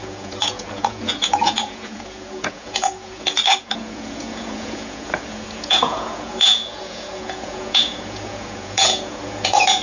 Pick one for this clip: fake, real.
fake